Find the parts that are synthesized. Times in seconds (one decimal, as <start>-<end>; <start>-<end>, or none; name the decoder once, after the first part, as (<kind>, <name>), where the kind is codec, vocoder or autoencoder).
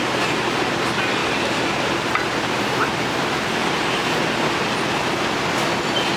1.2-4.9 (vocoder, BigVGAN v2)